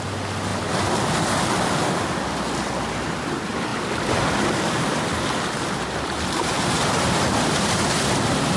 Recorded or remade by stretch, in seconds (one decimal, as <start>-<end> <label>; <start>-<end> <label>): 0.0-8.6 recorded